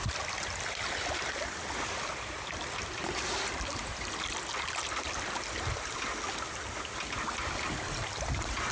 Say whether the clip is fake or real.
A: real